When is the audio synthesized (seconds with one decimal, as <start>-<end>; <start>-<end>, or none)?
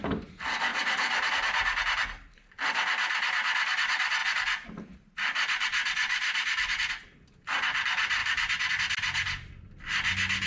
0.7-1.3; 4.2-6.9; 8.2-8.7